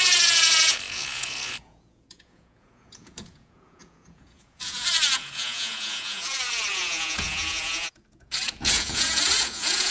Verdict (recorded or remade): remade